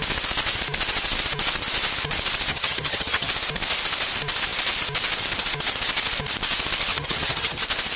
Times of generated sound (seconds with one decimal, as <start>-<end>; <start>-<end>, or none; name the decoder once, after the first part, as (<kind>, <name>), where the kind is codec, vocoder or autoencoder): 2.5-3.3 (vocoder, HiFi-GAN); 6.9-7.6